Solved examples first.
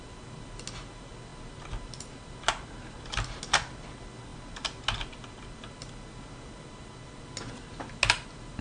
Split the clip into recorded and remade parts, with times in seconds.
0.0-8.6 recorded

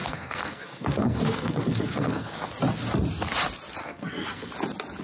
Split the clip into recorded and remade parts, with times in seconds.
0.0-2.5 remade; 2.5-3.8 recorded; 3.8-4.5 remade; 4.5-5.0 recorded

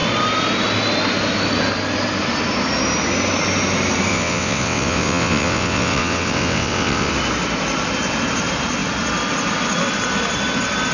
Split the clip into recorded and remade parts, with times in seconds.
0.0-4.1 recorded; 4.1-7.1 remade; 7.1-10.9 recorded

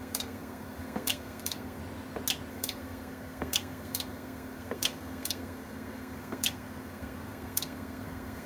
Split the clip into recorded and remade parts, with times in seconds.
0.0-1.8 remade; 1.8-2.5 recorded; 2.5-8.5 remade

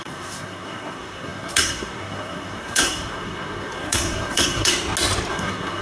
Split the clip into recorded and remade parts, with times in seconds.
0.0-4.7 remade; 4.7-5.3 recorded; 5.3-5.8 remade

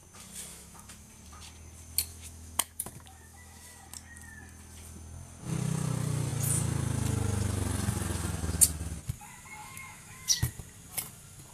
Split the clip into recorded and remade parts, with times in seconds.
0.0-0.5 recorded; 0.5-1.1 remade; 1.1-2.1 recorded; 2.1-3.6 remade; 3.6-9.6 recorded; 9.6-10.4 remade; 10.4-11.5 recorded

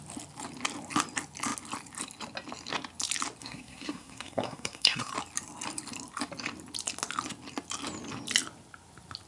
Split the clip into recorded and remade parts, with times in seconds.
0.0-3.4 recorded; 3.4-5.1 remade; 5.1-9.3 recorded

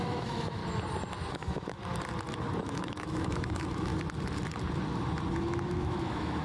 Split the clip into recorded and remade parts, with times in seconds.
0.0-0.6 remade; 0.6-1.3 recorded; 1.3-1.8 remade; 1.8-2.6 recorded; 2.6-3.9 remade; 3.9-5.3 recorded; 5.3-6.4 remade